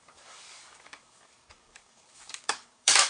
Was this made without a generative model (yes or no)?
no